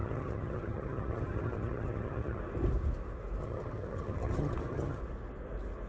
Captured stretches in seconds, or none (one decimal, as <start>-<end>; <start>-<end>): 2.4-3.4; 5.0-5.9